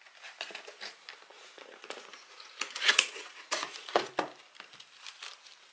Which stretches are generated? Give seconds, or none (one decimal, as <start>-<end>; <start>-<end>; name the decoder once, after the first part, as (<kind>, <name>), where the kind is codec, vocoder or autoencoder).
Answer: 1.3-4.1 (vocoder, Vocos)